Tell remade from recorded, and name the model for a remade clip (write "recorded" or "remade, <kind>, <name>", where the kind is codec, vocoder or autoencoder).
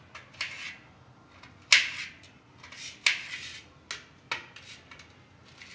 recorded